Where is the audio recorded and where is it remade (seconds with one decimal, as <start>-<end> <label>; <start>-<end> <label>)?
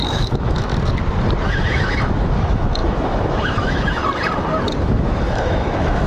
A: 0.0-0.7 remade; 0.7-1.5 recorded; 1.5-4.0 remade; 4.0-4.8 recorded; 4.8-6.1 remade